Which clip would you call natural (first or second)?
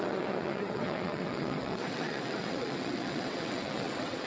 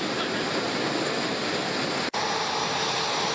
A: second